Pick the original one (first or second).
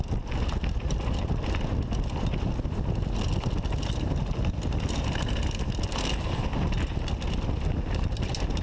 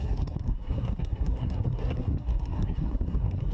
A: first